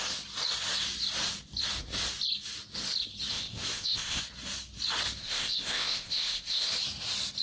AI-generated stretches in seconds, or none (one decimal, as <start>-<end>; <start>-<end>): 3.3-4.2; 5.2-6.7